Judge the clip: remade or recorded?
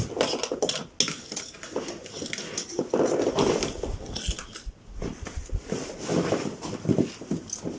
recorded